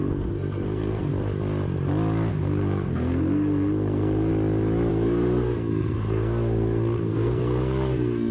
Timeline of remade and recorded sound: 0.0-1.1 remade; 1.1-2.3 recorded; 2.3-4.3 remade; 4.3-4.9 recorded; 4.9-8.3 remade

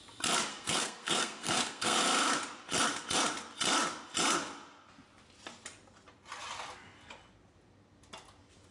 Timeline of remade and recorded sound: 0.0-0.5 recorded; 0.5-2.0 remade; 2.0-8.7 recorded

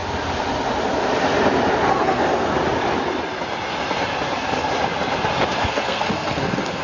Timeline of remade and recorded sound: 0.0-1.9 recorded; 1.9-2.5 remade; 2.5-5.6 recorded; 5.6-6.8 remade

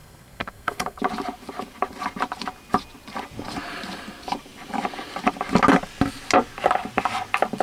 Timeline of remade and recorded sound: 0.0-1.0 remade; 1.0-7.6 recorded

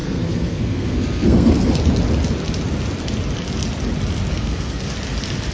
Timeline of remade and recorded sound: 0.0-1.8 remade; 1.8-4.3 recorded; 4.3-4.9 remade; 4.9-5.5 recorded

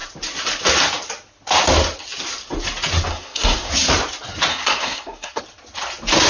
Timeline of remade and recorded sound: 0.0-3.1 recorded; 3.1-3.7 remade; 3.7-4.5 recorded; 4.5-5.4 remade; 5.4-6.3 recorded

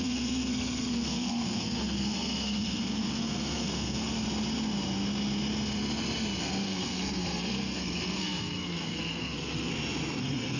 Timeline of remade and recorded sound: 0.0-4.1 remade; 4.1-6.4 recorded; 6.4-9.7 remade; 9.7-10.2 recorded; 10.2-10.6 remade